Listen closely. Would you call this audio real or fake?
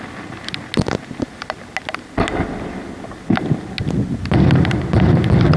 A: real